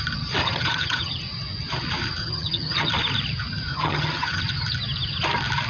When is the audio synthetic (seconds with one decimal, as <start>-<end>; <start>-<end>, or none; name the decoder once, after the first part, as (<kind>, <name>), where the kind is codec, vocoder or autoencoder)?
0.4-1.2 (vocoder, HiFi-GAN); 2.2-2.9; 3.7-4.4